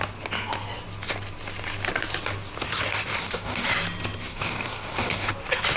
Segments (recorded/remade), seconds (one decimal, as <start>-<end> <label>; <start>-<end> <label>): 0.0-3.2 recorded; 3.2-3.7 remade; 3.7-4.3 recorded; 4.3-5.3 remade; 5.3-5.8 recorded